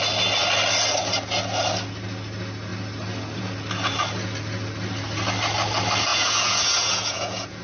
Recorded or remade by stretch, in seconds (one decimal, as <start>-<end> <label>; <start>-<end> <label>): 0.0-6.1 recorded; 6.1-7.6 remade